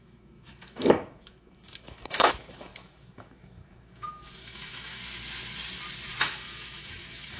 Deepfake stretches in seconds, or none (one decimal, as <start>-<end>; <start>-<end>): 0.0-5.0; 6.2-7.4